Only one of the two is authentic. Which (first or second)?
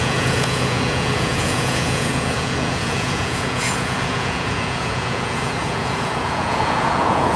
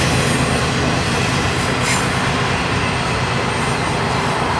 second